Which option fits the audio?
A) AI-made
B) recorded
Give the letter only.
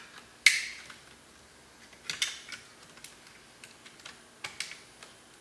B